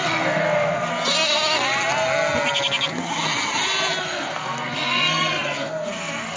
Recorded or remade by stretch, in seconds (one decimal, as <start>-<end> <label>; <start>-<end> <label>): 0.0-0.9 remade; 0.9-4.0 recorded; 4.0-6.4 remade

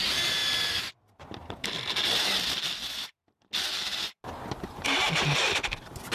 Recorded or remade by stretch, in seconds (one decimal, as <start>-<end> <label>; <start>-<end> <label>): 0.0-6.1 recorded

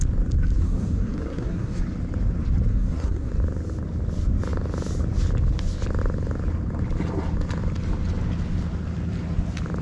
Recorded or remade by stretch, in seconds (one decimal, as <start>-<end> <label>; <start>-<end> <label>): 0.0-0.6 recorded; 0.6-1.8 remade; 1.8-2.7 recorded; 2.7-3.3 remade; 3.3-9.8 recorded

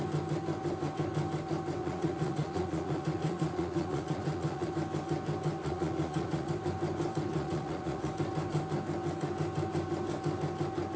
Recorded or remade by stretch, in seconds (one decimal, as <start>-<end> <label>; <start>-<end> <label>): 0.0-1.8 recorded; 1.8-4.7 remade; 4.7-5.6 recorded; 5.6-6.5 remade; 6.5-7.3 recorded; 7.3-8.1 remade; 8.1-11.0 recorded

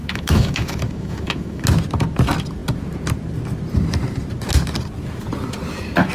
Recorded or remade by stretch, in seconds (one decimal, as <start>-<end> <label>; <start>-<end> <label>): 0.0-1.6 remade; 1.6-6.1 recorded

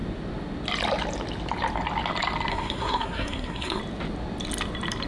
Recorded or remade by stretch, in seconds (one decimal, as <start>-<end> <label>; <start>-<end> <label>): 0.0-2.5 recorded; 2.5-3.8 remade; 3.8-5.1 recorded

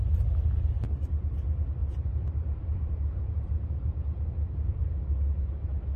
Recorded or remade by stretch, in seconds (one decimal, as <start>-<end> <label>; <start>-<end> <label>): 0.0-1.8 recorded; 1.8-5.4 remade; 5.4-6.0 recorded

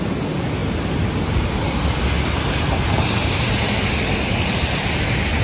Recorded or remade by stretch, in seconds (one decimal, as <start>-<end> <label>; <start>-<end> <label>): 0.0-5.4 recorded